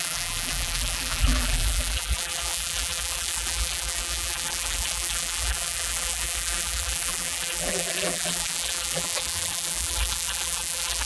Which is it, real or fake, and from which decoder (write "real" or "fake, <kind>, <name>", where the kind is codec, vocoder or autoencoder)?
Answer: fake, vocoder, BigVGAN v2